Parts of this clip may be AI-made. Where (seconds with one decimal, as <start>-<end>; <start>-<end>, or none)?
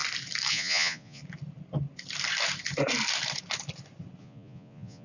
0.5-1.2; 4.2-5.0